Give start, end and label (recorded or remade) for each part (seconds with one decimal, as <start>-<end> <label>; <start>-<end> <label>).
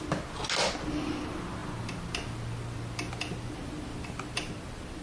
0.0-5.0 recorded